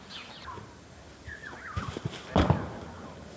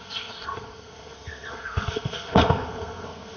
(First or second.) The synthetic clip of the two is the second